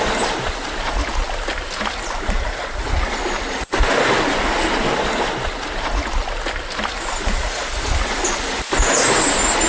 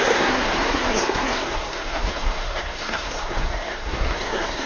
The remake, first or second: second